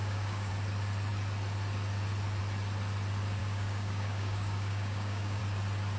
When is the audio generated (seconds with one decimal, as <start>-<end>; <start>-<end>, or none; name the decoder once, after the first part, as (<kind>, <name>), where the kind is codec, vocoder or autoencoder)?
0.0-0.5 (codec, DAC); 3.4-5.4